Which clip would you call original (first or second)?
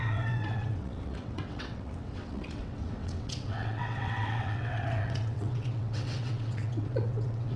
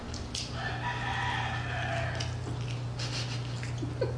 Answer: second